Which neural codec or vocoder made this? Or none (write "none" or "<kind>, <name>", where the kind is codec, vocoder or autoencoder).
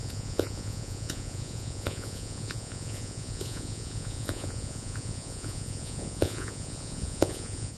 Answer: vocoder, Vocos